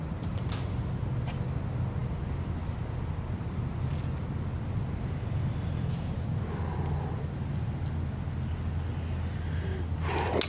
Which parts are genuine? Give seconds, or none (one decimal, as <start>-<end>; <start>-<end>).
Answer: 0.0-10.5